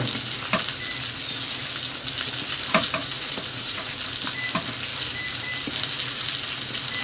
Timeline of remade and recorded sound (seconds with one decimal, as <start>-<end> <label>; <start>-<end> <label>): 0.0-3.0 recorded; 3.0-3.9 remade; 3.9-7.0 recorded

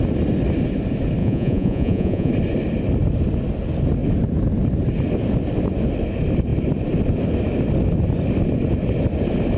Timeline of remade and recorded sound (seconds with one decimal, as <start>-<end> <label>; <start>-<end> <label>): 0.0-1.2 recorded; 1.2-2.3 remade; 2.3-9.6 recorded